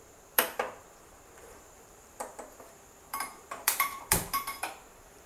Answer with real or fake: fake